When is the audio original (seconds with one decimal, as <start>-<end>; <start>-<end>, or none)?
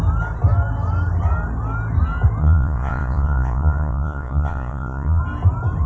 0.0-2.4; 5.2-5.9